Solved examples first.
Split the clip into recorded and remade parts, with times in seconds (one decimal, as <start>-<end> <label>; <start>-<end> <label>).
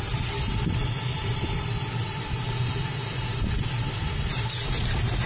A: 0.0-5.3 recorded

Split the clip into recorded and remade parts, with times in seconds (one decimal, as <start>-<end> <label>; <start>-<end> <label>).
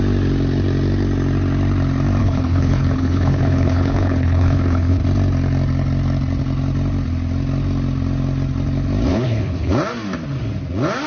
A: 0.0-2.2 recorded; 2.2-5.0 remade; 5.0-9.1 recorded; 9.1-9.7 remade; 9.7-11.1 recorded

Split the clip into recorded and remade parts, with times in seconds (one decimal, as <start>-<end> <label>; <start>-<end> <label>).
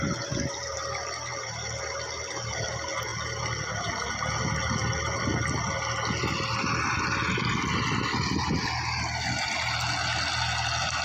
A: 0.0-11.0 recorded